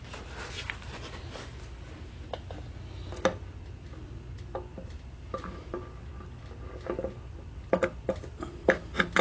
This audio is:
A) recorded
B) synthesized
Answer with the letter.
A